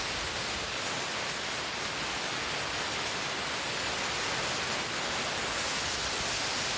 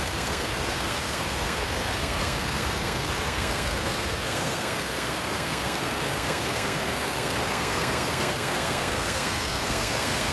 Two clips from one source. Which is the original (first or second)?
first